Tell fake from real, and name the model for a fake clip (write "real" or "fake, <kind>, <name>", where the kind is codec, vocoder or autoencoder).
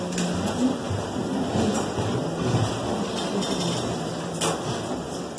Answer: fake, vocoder, BigVGAN v2